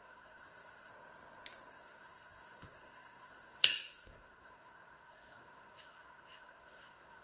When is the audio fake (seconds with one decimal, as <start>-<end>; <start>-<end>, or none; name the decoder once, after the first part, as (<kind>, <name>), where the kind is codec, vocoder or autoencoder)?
0.0-0.9 (codec, SNAC); 1.7-7.2